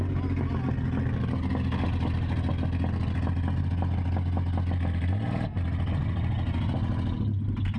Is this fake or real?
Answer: real